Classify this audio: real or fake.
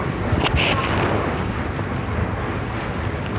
real